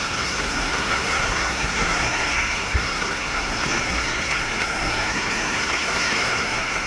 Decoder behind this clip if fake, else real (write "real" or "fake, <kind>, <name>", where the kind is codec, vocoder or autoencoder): fake, codec, SNAC